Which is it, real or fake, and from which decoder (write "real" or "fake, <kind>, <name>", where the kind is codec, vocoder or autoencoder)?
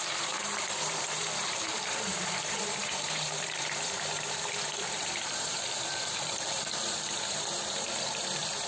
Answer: fake, vocoder, BigVGAN v2